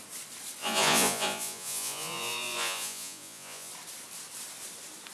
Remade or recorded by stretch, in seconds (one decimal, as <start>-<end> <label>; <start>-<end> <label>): 0.0-0.6 recorded; 0.6-3.7 remade; 3.7-5.1 recorded